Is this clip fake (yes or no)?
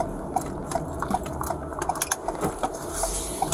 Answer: no